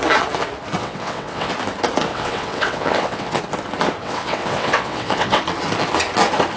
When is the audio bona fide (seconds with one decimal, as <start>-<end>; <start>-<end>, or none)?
0.0-0.8; 1.5-2.1; 3.4-4.0; 5.4-6.6